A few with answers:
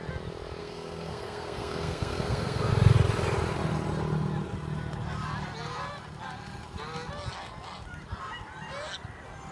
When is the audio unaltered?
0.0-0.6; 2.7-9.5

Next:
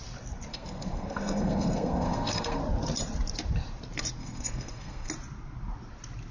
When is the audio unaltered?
0.0-0.5; 2.6-4.2; 5.1-6.3

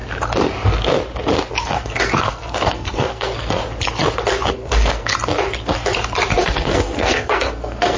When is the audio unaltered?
0.0-1.5; 3.6-4.5; 5.1-6.4

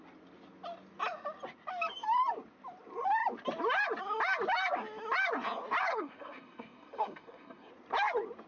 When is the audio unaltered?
0.0-5.9; 7.7-8.5

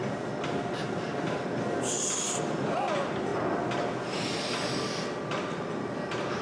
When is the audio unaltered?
0.0-6.4

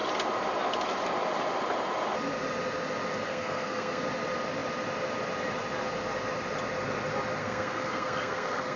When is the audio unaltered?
0.0-3.3; 4.0-7.4

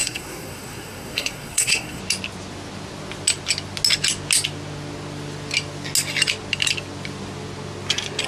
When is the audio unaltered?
2.0-8.3